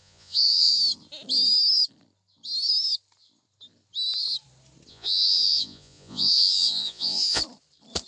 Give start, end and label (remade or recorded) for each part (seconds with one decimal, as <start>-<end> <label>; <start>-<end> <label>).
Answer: 0.0-0.7 remade; 0.7-4.9 recorded; 4.9-7.4 remade; 7.4-8.1 recorded